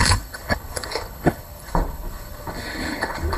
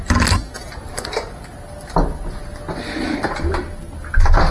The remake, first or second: first